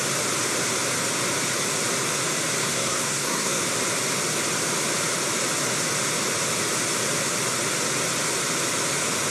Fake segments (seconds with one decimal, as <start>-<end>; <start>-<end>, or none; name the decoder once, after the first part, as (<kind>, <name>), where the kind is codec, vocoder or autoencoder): 2.6-3.6 (codec, SNAC)